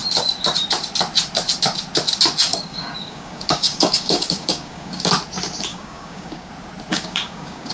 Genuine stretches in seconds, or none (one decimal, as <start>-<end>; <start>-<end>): 0.0-2.5; 5.1-5.7; 6.5-6.9